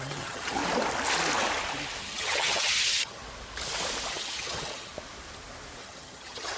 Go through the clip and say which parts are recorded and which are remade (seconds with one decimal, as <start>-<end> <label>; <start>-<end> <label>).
0.0-0.6 remade; 0.6-2.0 recorded; 2.0-3.2 remade; 3.2-4.1 recorded; 4.1-4.9 remade; 4.9-5.8 recorded; 5.8-6.6 remade